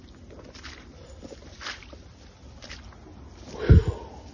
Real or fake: real